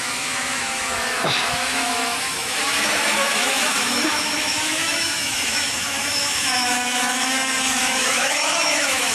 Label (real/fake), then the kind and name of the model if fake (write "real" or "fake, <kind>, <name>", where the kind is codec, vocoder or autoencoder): fake, autoencoder, DAC-VAE